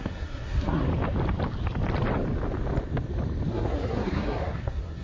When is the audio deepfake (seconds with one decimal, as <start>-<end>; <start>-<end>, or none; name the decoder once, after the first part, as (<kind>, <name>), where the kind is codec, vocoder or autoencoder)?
0.0-0.9 (codec, SNAC); 3.5-5.0